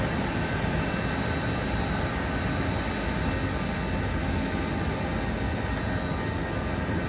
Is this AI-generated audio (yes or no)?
no